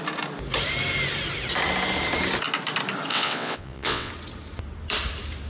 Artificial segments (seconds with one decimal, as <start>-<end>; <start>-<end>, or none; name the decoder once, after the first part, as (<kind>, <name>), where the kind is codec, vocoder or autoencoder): 3.1-4.1 (vocoder, WaveNeXt)